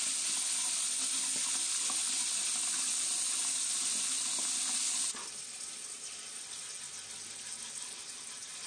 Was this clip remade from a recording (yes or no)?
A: no